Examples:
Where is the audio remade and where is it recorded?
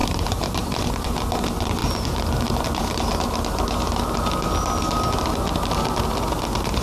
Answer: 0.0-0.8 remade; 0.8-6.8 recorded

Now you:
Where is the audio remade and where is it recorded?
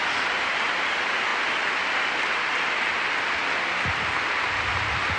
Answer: 0.0-5.2 recorded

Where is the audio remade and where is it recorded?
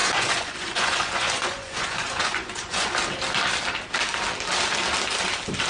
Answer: 0.0-2.9 remade; 2.9-5.7 recorded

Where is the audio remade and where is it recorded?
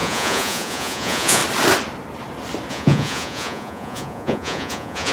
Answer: 0.0-1.4 remade; 1.4-2.7 recorded; 2.7-5.1 remade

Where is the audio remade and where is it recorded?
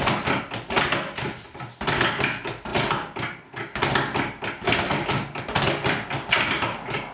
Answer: 0.0-7.1 recorded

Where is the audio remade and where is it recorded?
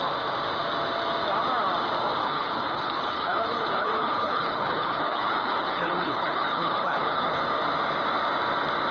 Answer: 0.0-2.2 recorded; 2.2-7.4 remade; 7.4-8.9 recorded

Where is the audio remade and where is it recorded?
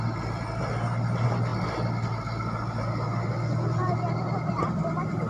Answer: 0.0-5.3 recorded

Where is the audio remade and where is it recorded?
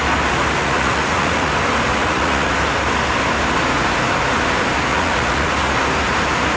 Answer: 0.0-0.6 recorded; 0.6-1.5 remade; 1.5-1.9 recorded; 1.9-2.5 remade; 2.5-4.9 recorded; 4.9-5.5 remade; 5.5-6.6 recorded